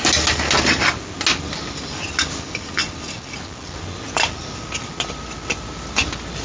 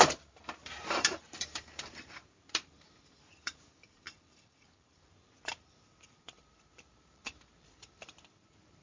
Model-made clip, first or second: second